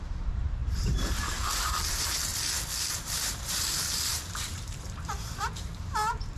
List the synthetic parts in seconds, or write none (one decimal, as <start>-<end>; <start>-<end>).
0.0-2.3; 3.0-6.4